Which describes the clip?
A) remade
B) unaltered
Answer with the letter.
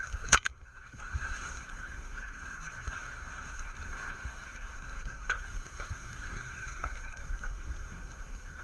A